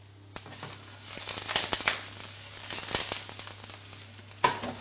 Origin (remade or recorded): recorded